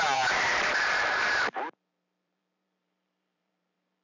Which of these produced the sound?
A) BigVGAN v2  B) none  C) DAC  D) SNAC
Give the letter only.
A